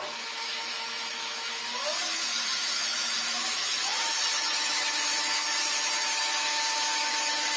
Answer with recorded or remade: remade